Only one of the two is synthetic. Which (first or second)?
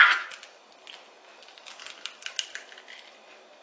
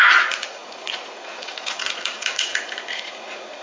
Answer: second